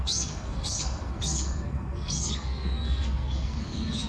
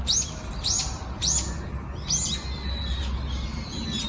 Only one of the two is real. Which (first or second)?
second